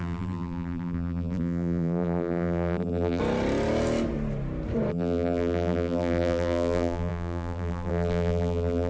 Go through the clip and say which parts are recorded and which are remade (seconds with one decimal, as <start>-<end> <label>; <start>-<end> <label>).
0.0-3.2 remade; 3.2-4.9 recorded; 4.9-8.9 remade